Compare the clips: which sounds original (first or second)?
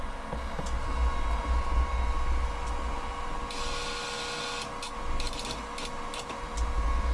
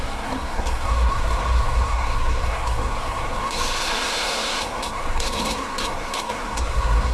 first